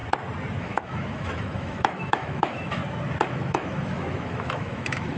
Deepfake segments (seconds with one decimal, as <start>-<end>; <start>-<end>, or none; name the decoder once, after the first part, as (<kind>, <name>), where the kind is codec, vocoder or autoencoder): 0.6-2.8 (autoencoder, DAC-VAE); 3.3-5.2